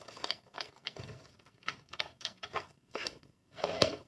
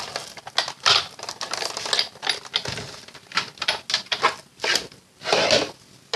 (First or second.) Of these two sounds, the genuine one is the second